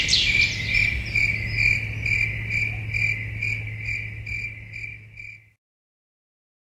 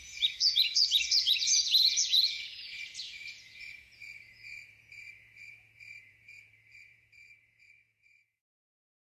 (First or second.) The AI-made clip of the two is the second